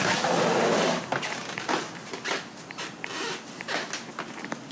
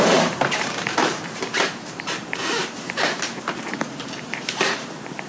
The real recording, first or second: first